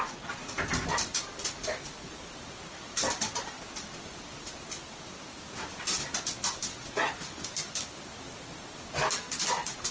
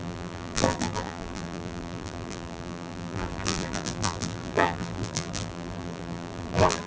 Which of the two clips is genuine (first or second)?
first